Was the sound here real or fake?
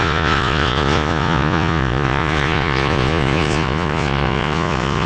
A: fake